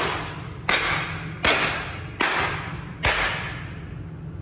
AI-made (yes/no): no